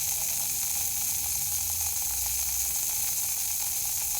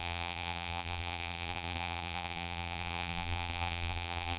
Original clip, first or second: first